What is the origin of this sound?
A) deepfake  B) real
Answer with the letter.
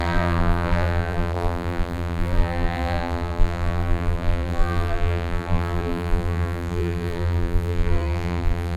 A